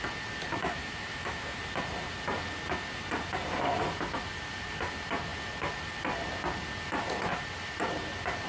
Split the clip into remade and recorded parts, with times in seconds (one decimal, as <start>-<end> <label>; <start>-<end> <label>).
0.0-0.6 recorded; 0.6-1.6 remade; 1.6-8.5 recorded